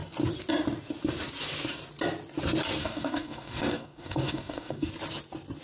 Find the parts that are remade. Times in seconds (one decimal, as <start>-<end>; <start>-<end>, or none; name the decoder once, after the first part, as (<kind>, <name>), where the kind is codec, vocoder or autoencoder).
2.8-4.9 (codec, DAC)